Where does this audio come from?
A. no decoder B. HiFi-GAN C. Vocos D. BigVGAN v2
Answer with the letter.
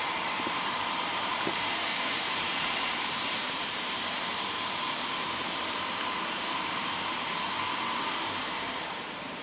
D